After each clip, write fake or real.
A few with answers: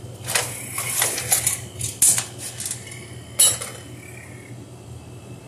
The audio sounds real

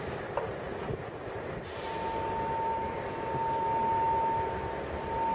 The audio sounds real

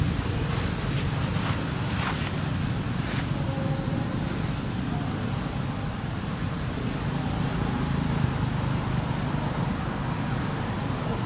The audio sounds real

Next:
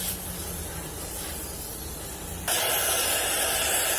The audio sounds real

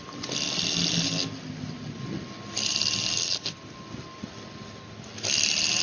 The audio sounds real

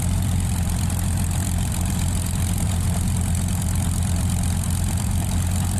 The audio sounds fake